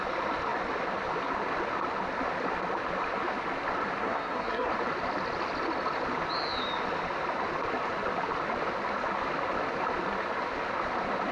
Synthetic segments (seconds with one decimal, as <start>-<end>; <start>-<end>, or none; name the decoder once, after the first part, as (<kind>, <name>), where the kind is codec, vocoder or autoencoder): 4.0-4.7 (codec, SNAC)